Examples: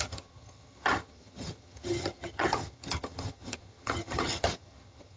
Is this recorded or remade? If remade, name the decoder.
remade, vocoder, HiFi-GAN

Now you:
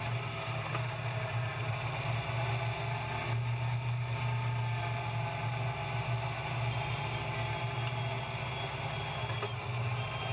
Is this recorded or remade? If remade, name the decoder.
recorded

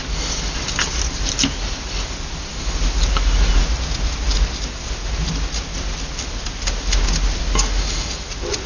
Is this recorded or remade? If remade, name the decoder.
recorded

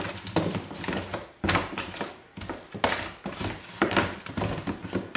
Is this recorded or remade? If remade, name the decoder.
recorded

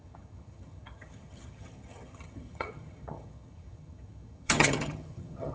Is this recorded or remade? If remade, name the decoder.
remade, vocoder, HiFi-GAN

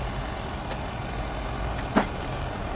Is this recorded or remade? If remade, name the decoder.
recorded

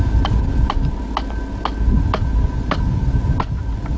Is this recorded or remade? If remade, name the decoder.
recorded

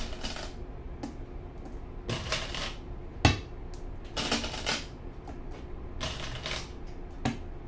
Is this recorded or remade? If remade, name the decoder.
recorded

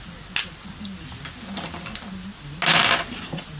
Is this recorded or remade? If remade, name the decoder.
recorded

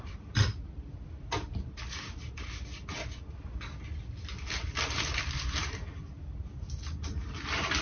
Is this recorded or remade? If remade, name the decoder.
recorded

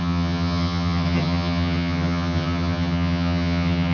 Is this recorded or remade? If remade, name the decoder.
remade, vocoder, HiFi-GAN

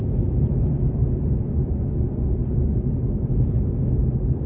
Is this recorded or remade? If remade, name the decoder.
recorded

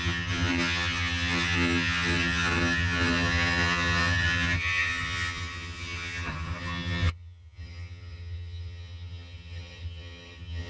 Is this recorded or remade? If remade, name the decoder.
remade, vocoder, HiFi-GAN